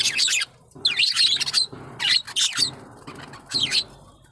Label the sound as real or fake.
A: real